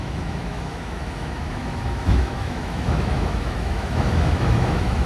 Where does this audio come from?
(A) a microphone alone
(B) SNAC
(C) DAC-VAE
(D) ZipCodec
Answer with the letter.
C